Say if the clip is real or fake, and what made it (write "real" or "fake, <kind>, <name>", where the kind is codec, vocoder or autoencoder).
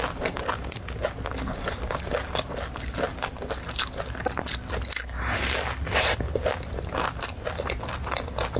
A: real